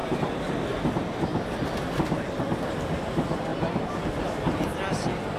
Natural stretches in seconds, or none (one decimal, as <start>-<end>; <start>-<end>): 0.0-5.4